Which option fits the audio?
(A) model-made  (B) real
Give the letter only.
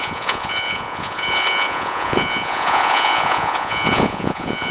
A